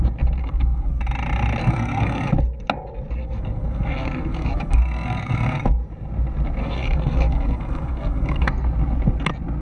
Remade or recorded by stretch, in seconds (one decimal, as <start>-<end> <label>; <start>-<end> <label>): 0.0-0.4 recorded; 0.4-1.0 remade; 1.0-1.6 recorded; 1.6-2.3 remade; 2.3-3.2 recorded; 3.2-5.7 remade; 5.7-6.6 recorded; 6.6-8.5 remade; 8.5-9.6 recorded